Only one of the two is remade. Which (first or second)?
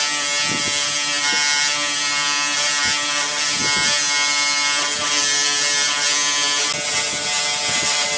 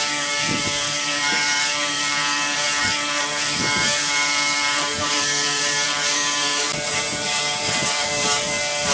second